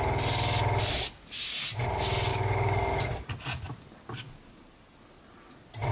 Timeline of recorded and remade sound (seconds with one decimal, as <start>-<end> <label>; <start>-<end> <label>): 0.0-2.3 recorded; 2.3-3.3 remade; 3.3-5.9 recorded

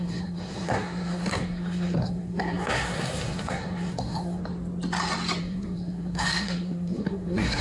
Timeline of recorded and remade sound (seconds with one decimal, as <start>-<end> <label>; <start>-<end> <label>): 0.0-4.4 remade; 4.4-5.4 recorded; 5.4-7.6 remade

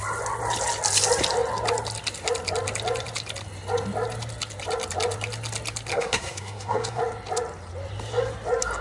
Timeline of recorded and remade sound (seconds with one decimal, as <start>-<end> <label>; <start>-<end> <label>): 0.0-5.9 recorded; 5.9-7.0 remade; 7.0-8.8 recorded